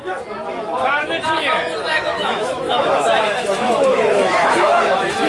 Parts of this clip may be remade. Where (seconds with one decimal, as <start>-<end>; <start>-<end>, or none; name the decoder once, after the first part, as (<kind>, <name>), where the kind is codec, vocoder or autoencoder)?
1.9-5.3 (autoencoder, DAC-VAE)